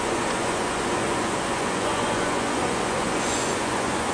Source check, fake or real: fake